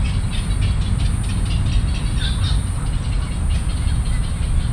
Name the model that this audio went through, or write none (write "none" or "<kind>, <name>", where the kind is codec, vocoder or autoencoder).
none